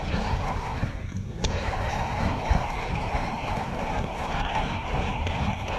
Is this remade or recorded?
remade